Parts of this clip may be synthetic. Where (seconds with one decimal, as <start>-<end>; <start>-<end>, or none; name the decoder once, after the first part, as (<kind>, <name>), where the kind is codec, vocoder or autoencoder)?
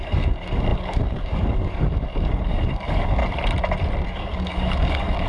0.0-3.2 (codec, DAC); 4.1-5.3